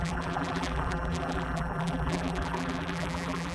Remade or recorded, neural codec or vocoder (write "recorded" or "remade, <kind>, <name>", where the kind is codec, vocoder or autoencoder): remade, vocoder, BigVGAN v2